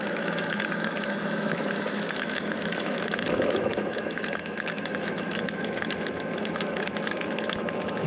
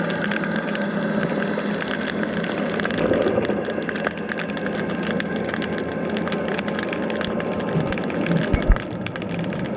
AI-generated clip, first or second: first